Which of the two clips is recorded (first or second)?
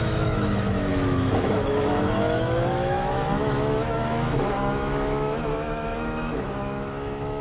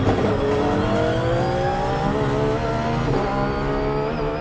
second